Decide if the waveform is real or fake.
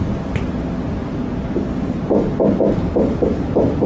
real